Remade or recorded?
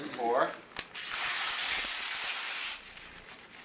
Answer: recorded